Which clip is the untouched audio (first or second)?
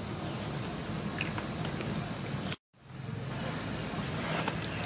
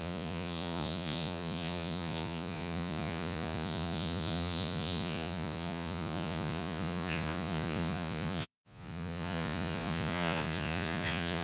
first